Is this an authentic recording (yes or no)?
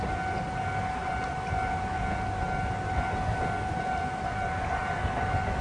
yes